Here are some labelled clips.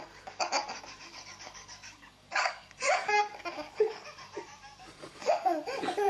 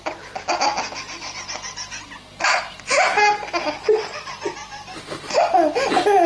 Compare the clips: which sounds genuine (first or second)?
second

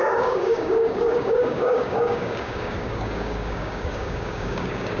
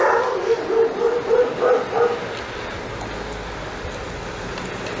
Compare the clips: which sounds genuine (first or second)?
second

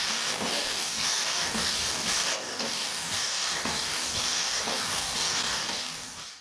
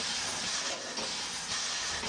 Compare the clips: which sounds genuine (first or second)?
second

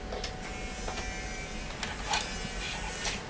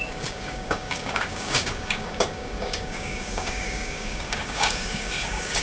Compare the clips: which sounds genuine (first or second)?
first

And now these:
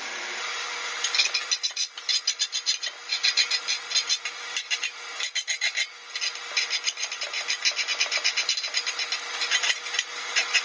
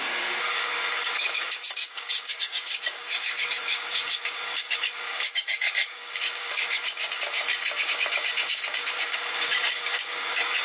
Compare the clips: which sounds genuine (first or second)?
first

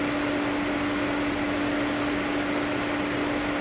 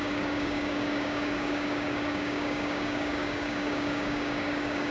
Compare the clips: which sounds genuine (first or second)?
first